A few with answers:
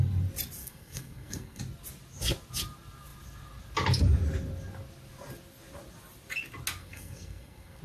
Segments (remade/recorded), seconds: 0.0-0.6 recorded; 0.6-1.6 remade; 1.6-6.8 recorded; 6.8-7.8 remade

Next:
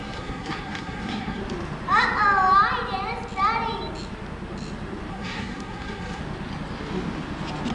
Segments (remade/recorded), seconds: 0.0-1.4 remade; 1.4-5.1 recorded; 5.1-6.2 remade; 6.2-7.7 recorded

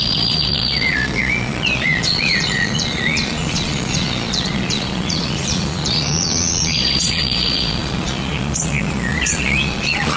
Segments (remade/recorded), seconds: 0.0-10.2 remade

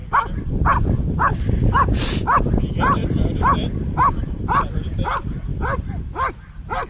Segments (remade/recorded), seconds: 0.0-3.0 recorded; 3.0-4.1 remade; 4.1-5.5 recorded; 5.5-6.0 remade; 6.0-6.9 recorded

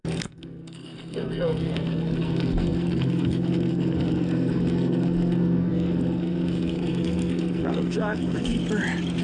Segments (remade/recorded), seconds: 0.0-8.6 remade; 8.6-9.2 recorded

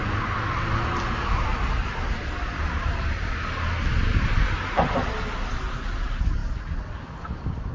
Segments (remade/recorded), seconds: 0.0-7.7 recorded